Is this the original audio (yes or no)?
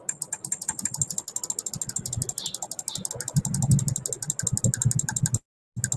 yes